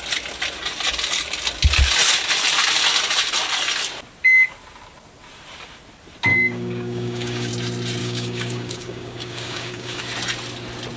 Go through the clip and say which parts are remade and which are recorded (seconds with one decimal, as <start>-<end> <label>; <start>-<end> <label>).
0.0-6.3 recorded; 6.3-7.5 remade; 7.5-8.0 recorded; 8.0-10.0 remade; 10.0-11.0 recorded